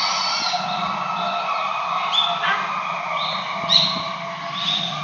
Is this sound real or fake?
real